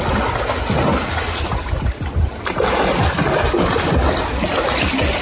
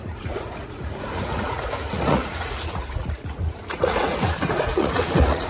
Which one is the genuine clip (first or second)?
first